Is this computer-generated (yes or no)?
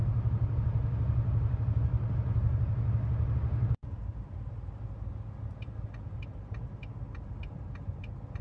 no